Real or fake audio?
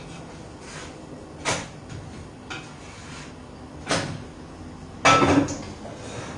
real